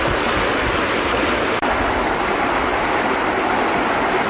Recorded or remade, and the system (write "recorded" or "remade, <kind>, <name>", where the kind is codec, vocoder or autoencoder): recorded